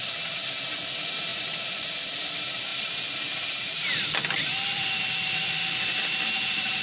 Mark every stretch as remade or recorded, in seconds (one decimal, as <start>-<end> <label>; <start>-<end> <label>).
0.0-1.3 recorded; 1.3-2.3 remade; 2.3-2.7 recorded; 2.7-6.8 remade